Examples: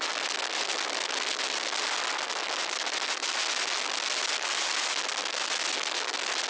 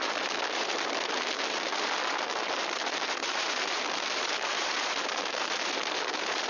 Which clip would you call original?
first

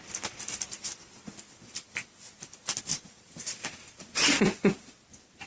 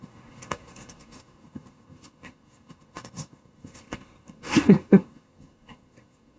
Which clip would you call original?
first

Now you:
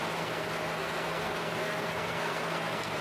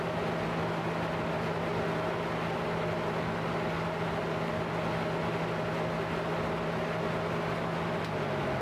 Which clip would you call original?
second